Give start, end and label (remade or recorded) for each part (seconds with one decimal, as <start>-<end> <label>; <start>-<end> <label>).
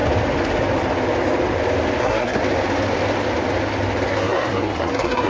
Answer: 0.0-2.0 recorded; 2.0-2.4 remade; 2.4-4.1 recorded; 4.1-5.3 remade